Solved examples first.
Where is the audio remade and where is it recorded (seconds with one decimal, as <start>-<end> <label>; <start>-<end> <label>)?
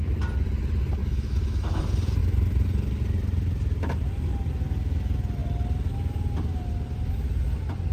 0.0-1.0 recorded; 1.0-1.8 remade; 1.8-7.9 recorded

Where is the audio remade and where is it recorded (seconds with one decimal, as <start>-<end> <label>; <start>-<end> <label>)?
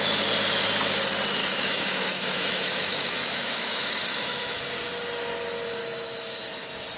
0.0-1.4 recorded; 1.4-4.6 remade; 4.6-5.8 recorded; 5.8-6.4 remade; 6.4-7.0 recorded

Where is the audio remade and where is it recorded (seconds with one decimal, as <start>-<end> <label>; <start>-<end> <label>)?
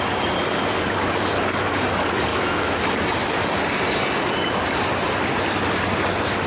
0.0-2.3 recorded; 2.3-2.8 remade; 2.8-6.5 recorded